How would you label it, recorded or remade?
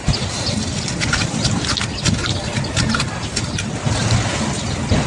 recorded